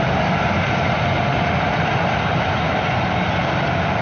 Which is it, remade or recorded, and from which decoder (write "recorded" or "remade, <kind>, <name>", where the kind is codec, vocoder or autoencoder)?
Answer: recorded